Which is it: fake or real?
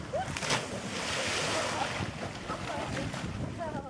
real